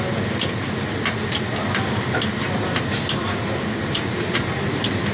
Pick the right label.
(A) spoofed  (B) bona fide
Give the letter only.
B